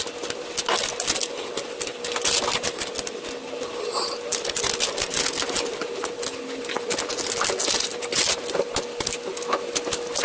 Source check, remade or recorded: recorded